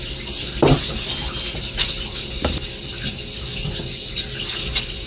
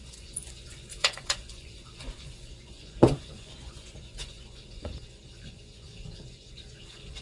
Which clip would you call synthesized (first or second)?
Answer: second